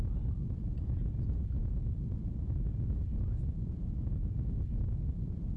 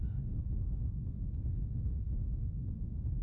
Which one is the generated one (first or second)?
second